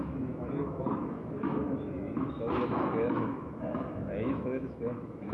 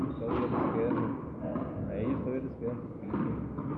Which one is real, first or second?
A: second